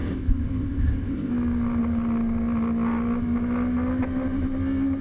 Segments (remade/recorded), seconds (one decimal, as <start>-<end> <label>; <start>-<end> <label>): 0.0-1.3 remade; 1.3-5.0 recorded